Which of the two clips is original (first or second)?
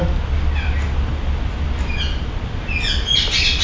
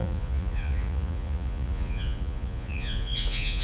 first